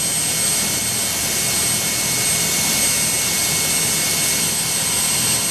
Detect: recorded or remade recorded